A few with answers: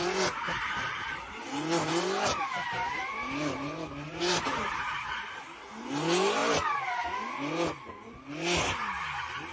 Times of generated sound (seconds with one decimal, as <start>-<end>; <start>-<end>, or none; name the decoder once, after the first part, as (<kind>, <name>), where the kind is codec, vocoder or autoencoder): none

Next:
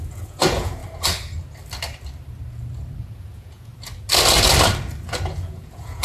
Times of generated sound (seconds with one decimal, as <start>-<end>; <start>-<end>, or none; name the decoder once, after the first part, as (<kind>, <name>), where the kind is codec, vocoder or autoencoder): 0.0-0.8 (vocoder, Vocos); 3.0-3.7; 5.2-6.0

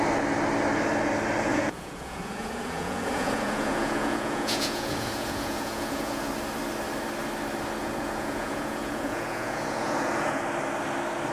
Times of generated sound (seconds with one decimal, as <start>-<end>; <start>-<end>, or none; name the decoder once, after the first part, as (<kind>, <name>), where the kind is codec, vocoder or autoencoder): 1.5-6.3 (vocoder, Vocos); 7.8-10.4

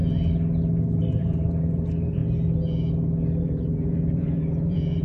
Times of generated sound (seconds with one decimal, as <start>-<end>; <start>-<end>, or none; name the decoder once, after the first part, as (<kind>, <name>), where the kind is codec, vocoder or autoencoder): 1.1-2.2 (vocoder, Vocos); 3.4-5.0

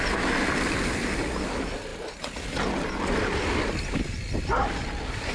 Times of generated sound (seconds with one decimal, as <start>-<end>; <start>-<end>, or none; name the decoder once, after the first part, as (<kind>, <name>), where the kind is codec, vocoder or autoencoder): none